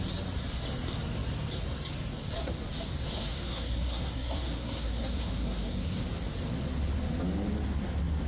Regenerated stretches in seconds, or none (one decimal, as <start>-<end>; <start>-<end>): 3.2-6.0